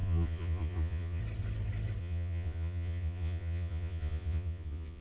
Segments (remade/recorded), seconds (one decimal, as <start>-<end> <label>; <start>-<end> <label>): 0.0-1.2 remade; 1.2-2.0 recorded; 2.0-5.0 remade